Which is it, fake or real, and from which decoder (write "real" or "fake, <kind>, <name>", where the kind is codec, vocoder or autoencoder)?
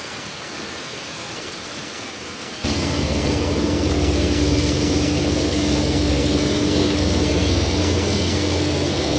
fake, codec, SNAC